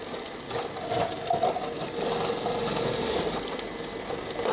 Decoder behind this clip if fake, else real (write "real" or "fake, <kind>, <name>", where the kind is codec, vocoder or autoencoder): real